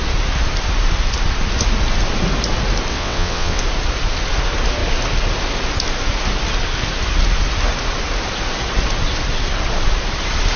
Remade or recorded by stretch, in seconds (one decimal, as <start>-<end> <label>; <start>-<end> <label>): 0.0-2.9 recorded; 2.9-3.6 remade; 3.6-10.6 recorded